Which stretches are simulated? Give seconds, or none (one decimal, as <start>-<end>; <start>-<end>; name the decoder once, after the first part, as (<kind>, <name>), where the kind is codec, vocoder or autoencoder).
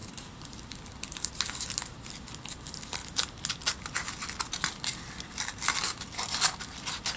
0.0-1.3 (vocoder, BigVGAN v2)